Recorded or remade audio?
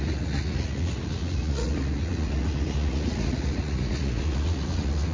remade